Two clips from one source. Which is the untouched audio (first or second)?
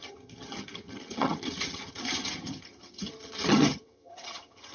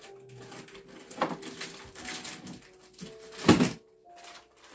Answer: second